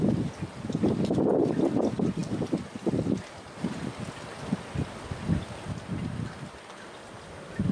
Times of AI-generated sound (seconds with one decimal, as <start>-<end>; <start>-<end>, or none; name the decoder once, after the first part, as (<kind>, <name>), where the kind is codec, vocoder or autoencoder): none